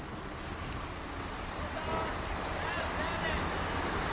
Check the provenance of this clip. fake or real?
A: real